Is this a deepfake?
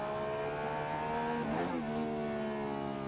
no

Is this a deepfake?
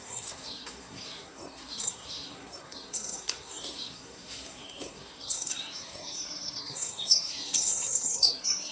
yes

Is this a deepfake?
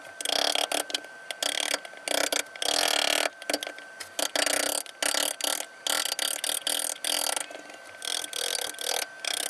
no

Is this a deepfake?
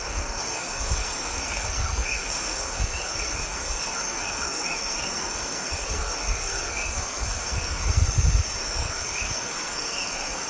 yes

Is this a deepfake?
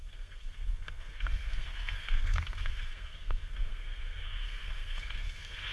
yes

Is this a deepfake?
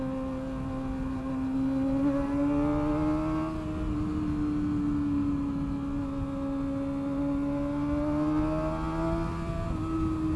no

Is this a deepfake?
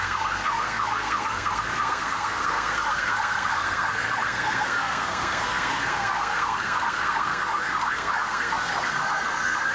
yes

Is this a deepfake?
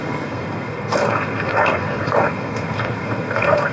yes